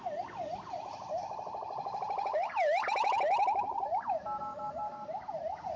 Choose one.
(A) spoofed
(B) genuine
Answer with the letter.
B